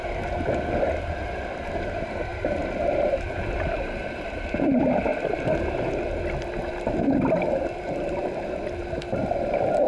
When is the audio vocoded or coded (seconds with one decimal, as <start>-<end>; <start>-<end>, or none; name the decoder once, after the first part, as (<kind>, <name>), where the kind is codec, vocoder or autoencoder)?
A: 0.0-5.1 (vocoder, BigVGAN v2); 7.9-8.8; 9.5-9.9